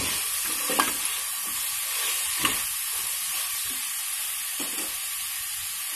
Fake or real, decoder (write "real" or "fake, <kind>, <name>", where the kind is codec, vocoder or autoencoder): real